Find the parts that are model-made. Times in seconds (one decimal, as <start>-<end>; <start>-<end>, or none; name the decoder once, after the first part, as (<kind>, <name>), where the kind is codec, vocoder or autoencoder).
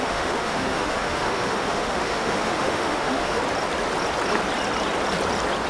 0.0-3.4 (autoencoder, DAC-VAE)